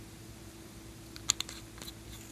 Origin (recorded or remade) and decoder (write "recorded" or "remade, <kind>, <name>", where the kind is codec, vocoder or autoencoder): recorded